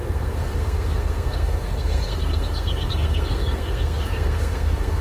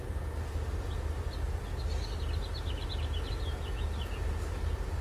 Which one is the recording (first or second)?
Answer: second